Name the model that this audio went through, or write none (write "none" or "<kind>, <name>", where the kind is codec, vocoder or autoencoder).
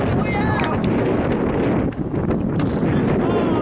none